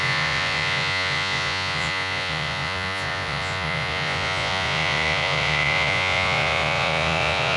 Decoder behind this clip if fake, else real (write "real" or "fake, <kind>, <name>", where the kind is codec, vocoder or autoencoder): fake, vocoder, Vocos